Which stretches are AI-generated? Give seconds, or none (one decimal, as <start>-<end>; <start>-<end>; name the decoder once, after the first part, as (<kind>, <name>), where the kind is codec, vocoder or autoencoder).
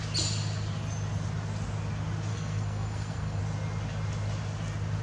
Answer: 2.3-3.4 (codec, SNAC)